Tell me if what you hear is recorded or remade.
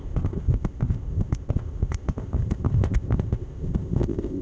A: remade